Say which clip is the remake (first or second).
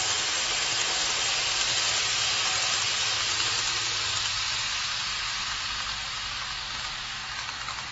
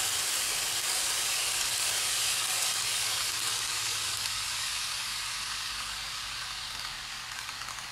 second